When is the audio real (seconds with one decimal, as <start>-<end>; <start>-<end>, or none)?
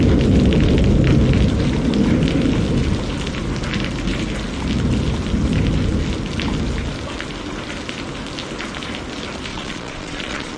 0.0-9.5